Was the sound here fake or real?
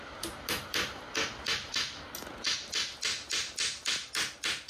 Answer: real